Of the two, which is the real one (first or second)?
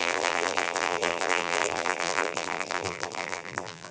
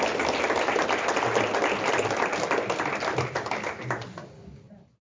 second